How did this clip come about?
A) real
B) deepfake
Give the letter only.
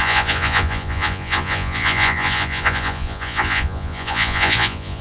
B